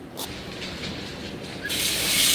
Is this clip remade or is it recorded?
recorded